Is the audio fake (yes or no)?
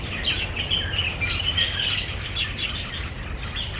no